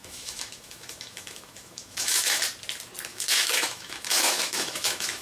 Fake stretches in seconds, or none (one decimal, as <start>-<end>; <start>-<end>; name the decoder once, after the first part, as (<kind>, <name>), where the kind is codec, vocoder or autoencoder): 0.0-2.4 (autoencoder, DAC-VAE); 3.1-5.2